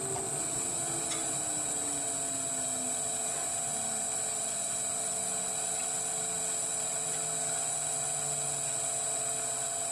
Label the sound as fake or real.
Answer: real